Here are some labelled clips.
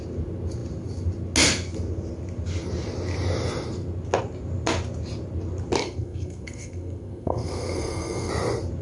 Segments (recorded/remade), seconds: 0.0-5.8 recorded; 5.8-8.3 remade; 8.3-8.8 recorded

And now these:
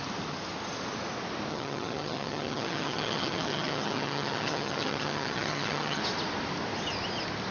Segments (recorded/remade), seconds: 0.0-1.5 recorded; 1.5-6.0 remade; 6.0-7.5 recorded

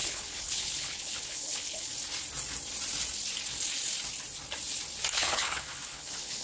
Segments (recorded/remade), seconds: 0.0-1.9 remade; 1.9-5.1 recorded; 5.1-6.4 remade

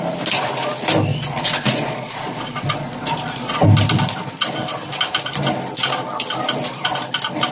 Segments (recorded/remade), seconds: 0.0-1.1 recorded; 1.1-3.6 remade; 3.6-7.5 recorded

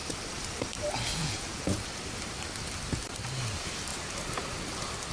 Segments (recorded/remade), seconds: 0.0-1.2 recorded; 1.2-1.8 remade; 1.8-5.1 recorded